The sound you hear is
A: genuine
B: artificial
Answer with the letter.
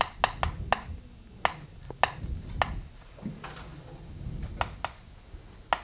A